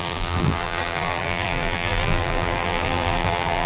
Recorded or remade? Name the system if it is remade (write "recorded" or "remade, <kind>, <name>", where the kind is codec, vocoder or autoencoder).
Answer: remade, vocoder, BigVGAN v2